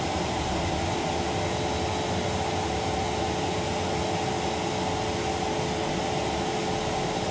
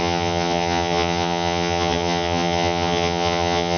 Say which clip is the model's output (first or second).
second